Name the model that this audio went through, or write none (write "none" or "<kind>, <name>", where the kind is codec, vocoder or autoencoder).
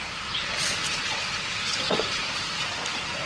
none